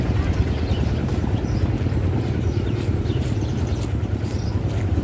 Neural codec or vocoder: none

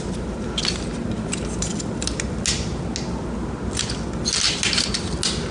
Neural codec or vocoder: none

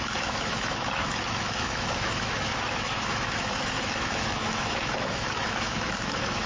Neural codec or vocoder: autoencoder, DAC-VAE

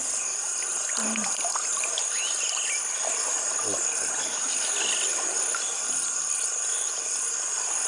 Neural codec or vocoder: none